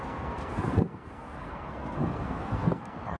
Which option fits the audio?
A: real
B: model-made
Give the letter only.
B